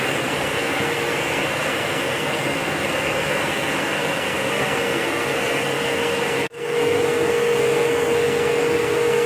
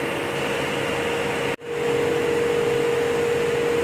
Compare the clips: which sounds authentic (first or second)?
second